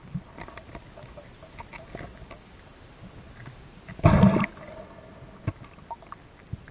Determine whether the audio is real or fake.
real